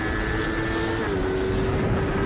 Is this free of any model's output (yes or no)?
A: yes